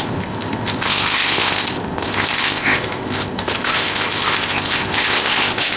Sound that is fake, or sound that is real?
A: fake